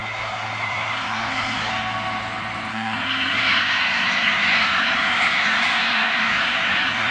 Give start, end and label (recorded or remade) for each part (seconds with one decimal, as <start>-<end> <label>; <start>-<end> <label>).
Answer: 0.0-1.7 remade; 1.7-2.7 recorded; 2.7-7.1 remade